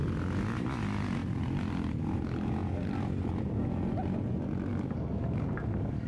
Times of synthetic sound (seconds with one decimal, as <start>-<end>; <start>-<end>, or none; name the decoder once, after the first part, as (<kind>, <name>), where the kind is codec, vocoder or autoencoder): 4.7-6.1 (codec, DAC)